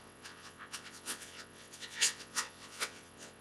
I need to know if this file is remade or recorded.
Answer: remade